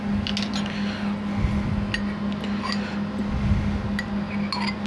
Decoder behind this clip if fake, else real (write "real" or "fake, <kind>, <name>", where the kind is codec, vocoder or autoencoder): real